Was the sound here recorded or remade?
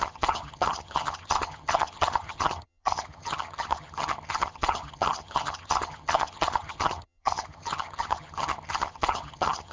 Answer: remade